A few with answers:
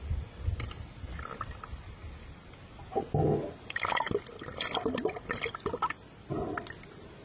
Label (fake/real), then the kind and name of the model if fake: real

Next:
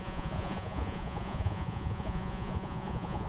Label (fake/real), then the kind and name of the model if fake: fake, vocoder, Vocos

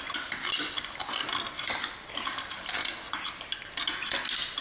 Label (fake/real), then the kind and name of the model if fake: real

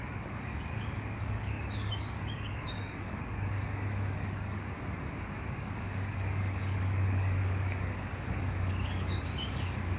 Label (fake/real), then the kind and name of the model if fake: fake, codec, DAC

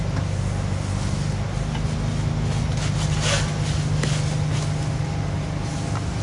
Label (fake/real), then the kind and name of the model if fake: real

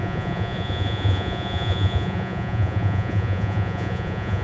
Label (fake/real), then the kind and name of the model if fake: fake, vocoder, Vocos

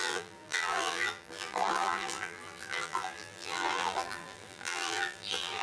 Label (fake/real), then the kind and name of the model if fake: fake, vocoder, BigVGAN v2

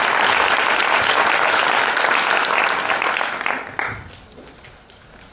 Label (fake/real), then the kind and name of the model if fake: real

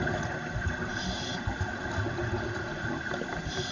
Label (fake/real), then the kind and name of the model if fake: real